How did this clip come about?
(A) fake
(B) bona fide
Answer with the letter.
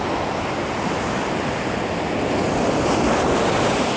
B